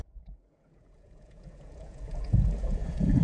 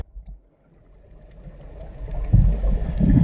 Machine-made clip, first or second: first